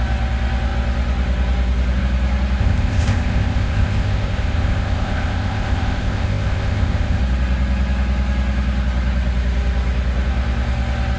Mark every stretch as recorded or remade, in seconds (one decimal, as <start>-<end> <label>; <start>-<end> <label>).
0.0-2.6 recorded; 2.6-7.2 remade; 7.2-11.2 recorded